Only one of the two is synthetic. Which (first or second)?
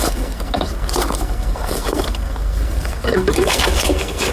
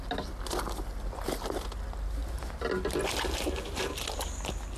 first